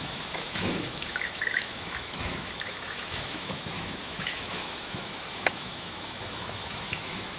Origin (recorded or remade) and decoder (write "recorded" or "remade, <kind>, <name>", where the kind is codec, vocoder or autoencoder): remade, autoencoder, DAC-VAE